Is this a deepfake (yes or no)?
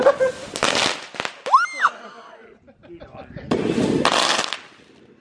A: no